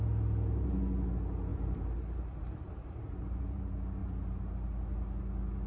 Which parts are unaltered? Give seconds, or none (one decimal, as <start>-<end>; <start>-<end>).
0.0-1.5; 3.6-4.0; 4.5-5.7